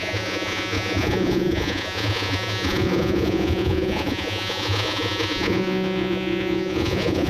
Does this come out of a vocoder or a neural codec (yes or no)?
yes